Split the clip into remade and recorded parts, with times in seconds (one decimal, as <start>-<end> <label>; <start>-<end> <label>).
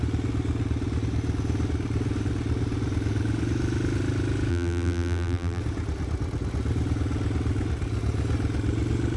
0.0-4.5 recorded; 4.5-5.6 remade; 5.6-9.2 recorded